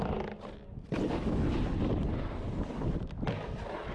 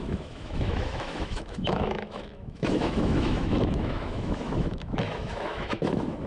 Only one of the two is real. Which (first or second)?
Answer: first